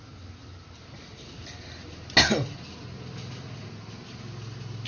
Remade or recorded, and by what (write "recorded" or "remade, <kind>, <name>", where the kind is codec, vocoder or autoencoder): recorded